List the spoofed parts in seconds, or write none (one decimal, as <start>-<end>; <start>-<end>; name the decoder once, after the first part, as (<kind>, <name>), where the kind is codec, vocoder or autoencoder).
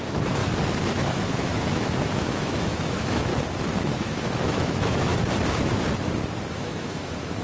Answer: 0.0-0.4 (autoencoder, DAC-VAE); 0.9-3.3; 4.0-5.1; 6.5-7.4